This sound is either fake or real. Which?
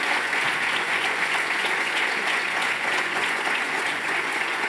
fake